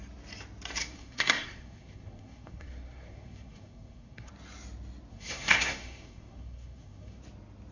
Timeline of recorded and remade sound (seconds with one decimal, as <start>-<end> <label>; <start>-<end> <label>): 0.0-0.8 recorded; 0.8-4.3 remade; 4.3-5.1 recorded; 5.1-7.2 remade; 7.2-7.7 recorded